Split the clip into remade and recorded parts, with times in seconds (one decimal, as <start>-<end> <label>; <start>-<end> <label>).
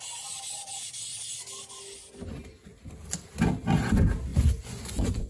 0.0-4.3 recorded; 4.3-5.3 remade